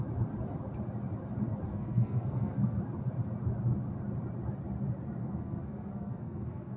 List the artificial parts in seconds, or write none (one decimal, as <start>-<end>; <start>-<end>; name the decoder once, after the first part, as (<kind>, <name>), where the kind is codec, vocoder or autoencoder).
1.7-2.8 (codec, SNAC); 5.2-6.8